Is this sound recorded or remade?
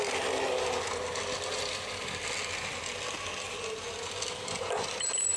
recorded